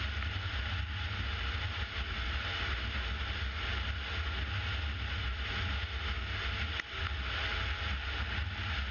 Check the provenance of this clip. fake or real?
real